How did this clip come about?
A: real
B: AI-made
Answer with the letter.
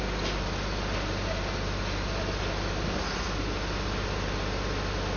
A